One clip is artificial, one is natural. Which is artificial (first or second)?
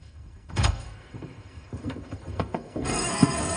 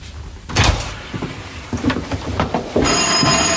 first